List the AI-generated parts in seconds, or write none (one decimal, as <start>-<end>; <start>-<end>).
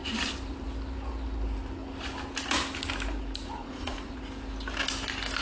3.6-4.2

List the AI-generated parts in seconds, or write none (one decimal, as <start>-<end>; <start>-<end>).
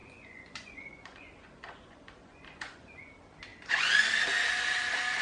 0.0-3.1; 3.5-4.1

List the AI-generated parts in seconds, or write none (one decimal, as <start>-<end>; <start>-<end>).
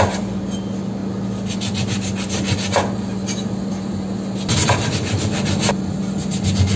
none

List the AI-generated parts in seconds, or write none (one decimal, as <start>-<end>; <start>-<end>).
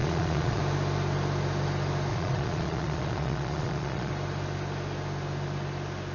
0.0-0.6; 2.1-4.1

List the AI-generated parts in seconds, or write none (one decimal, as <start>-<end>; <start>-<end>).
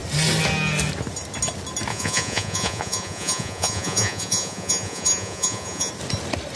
1.9-5.9